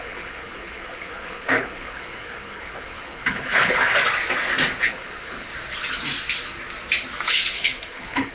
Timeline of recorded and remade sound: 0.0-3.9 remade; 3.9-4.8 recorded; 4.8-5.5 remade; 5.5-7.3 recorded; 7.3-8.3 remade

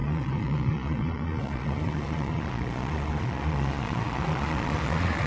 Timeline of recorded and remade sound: 0.0-5.3 remade

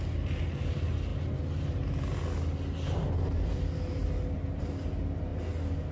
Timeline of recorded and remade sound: 0.0-5.9 recorded

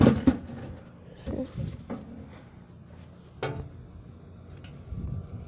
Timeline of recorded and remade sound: 0.0-5.5 recorded

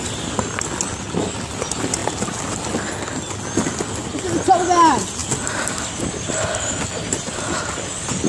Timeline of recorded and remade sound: 0.0-8.3 recorded